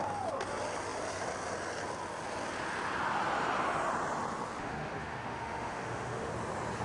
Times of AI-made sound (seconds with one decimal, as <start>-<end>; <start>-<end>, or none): 4.6-6.3